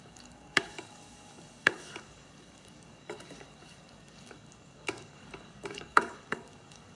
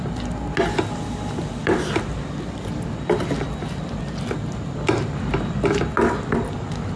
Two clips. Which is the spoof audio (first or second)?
first